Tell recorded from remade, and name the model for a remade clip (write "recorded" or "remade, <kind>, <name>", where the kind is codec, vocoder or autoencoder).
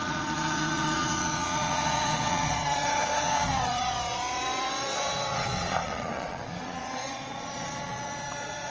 remade, vocoder, Vocos